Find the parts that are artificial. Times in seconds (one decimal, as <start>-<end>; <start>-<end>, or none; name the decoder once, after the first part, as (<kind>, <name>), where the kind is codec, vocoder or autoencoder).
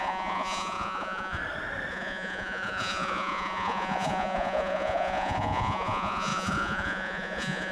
0.0-1.4 (vocoder, Vocos); 1.9-7.7